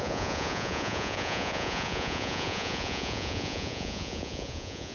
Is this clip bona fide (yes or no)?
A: no